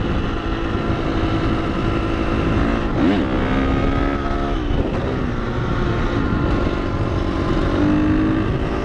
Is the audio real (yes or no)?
yes